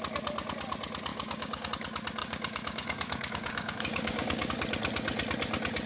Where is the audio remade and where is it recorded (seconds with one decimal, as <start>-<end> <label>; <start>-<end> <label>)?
0.0-1.1 recorded; 1.1-1.7 remade; 1.7-2.2 recorded; 2.2-4.5 remade; 4.5-5.9 recorded

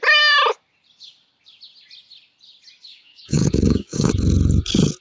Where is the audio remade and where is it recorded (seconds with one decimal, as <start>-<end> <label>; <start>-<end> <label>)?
0.0-2.9 recorded; 2.9-4.1 remade; 4.1-5.0 recorded

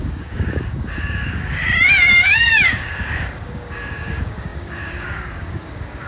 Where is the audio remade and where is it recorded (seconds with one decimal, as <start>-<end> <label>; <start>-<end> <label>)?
0.0-1.6 remade; 1.6-2.1 recorded; 2.1-6.1 remade

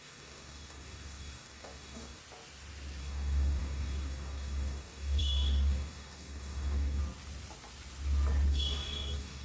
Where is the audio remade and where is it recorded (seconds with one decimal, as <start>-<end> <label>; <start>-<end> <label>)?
0.0-2.2 remade; 2.2-3.0 recorded; 3.0-7.0 remade; 7.0-8.5 recorded; 8.5-9.4 remade

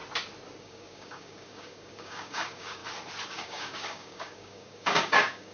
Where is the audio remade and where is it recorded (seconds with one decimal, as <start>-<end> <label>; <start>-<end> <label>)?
0.0-0.6 recorded; 0.6-2.8 remade; 2.8-3.3 recorded; 3.3-5.5 remade